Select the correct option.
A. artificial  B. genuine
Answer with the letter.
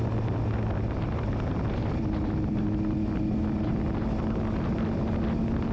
B